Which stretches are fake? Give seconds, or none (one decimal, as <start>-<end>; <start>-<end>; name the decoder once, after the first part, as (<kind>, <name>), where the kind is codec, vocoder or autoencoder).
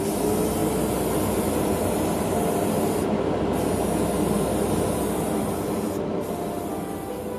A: none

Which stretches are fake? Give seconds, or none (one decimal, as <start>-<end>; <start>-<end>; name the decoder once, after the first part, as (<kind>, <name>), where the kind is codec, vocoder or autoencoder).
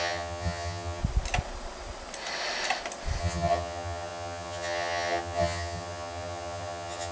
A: 0.0-1.0 (vocoder, HiFi-GAN); 3.2-7.1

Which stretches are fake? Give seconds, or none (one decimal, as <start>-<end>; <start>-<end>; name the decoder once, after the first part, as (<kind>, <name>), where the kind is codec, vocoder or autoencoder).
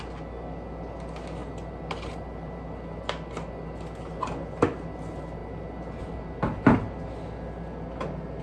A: none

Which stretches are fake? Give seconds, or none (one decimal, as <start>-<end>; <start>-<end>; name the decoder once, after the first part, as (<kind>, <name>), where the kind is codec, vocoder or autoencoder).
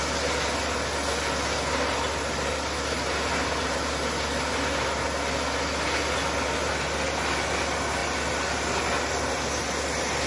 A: none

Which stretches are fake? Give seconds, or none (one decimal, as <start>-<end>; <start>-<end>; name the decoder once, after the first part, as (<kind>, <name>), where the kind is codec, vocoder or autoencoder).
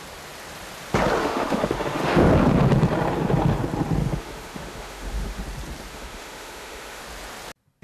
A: 1.2-2.3 (autoencoder, DAC-VAE); 4.0-5.4; 5.9-7.0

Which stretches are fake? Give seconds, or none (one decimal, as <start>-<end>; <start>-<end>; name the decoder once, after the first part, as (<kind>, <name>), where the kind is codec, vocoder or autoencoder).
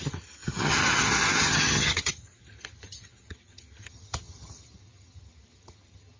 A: 0.0-6.2 (vocoder, HiFi-GAN)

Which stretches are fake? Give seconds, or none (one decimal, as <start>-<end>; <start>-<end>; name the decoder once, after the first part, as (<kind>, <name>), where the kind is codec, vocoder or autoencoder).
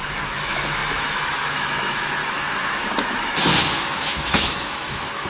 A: 0.0-2.2 (autoencoder, DAC-VAE); 2.7-5.3